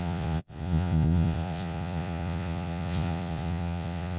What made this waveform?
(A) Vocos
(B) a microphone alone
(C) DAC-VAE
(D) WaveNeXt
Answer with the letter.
A